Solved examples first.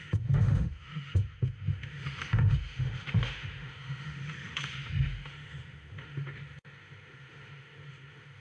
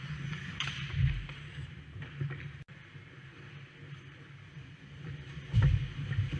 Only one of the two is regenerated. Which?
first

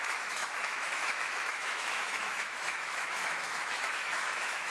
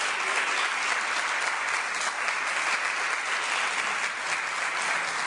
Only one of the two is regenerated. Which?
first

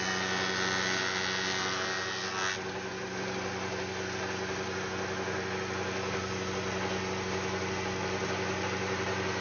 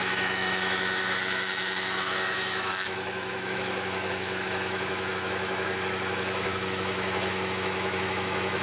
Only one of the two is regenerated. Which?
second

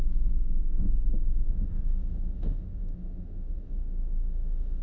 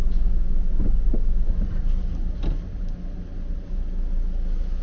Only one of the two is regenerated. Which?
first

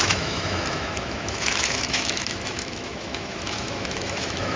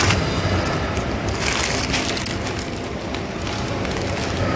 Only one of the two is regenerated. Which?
first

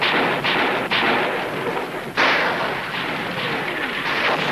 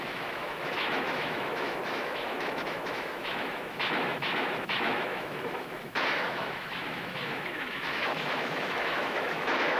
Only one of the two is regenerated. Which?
second